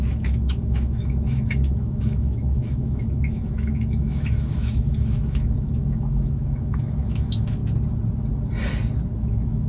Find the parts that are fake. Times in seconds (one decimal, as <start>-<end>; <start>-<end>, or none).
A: 0.0-7.6; 9.2-9.7

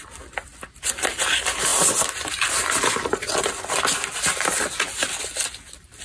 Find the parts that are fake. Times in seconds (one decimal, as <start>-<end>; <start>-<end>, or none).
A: none

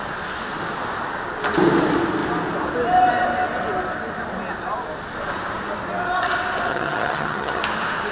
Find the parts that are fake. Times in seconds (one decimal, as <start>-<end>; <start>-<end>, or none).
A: 6.7-7.6